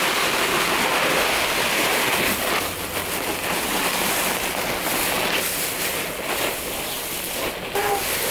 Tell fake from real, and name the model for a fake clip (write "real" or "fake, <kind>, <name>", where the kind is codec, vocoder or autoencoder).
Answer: real